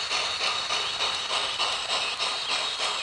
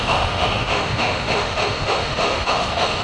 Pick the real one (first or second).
first